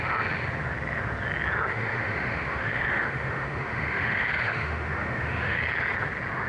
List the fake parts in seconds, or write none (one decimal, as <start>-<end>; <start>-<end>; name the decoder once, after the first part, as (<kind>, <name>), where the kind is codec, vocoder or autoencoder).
1.7-5.6 (autoencoder, DAC-VAE)

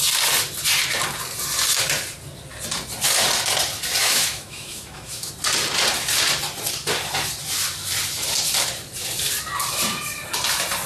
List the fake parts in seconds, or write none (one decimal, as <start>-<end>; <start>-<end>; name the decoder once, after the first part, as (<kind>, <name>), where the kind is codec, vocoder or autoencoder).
4.0-5.3 (autoencoder, DAC-VAE)